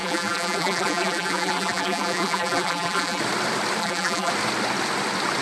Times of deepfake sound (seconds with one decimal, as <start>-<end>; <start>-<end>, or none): 0.0-3.2; 3.8-4.3